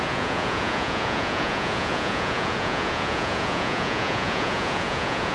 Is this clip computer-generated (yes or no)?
yes